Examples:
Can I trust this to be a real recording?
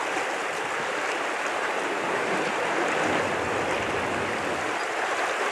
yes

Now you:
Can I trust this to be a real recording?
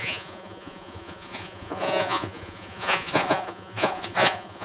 no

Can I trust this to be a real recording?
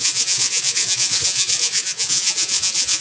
no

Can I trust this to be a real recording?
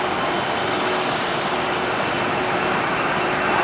yes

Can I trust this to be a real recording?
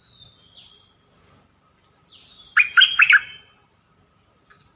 yes